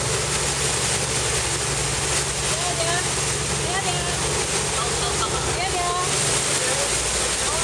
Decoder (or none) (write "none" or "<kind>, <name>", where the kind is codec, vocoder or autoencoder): none